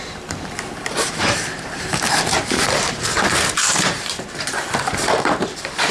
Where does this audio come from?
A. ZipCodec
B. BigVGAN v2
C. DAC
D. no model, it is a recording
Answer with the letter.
B